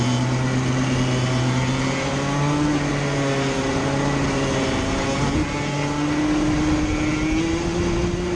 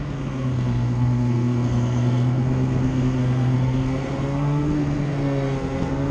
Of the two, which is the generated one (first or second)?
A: second